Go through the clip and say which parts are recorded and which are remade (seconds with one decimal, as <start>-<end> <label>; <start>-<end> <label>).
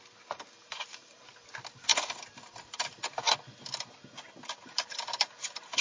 0.0-5.8 recorded